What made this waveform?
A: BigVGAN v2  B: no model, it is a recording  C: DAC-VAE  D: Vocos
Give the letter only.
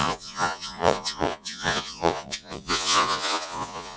D